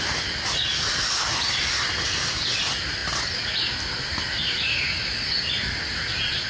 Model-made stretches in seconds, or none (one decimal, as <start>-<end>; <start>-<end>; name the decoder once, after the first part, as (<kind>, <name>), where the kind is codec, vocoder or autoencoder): none